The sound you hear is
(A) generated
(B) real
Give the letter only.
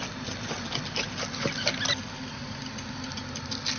B